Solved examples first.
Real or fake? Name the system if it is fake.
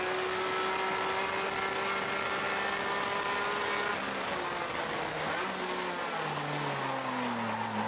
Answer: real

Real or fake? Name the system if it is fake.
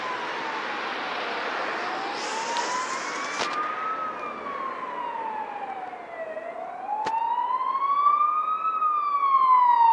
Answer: real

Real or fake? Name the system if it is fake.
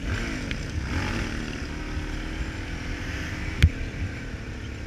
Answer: real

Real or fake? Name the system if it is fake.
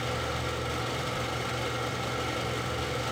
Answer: real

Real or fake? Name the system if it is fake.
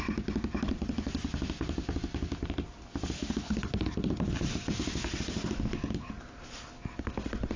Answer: real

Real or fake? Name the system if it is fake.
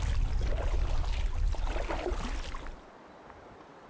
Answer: real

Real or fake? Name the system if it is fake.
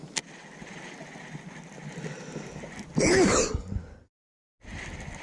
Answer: real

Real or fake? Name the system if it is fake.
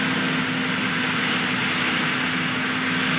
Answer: real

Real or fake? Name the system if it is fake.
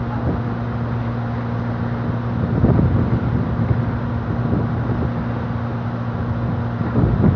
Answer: real